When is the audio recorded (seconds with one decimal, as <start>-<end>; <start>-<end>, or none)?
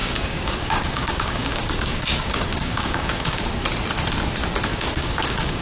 3.4-4.7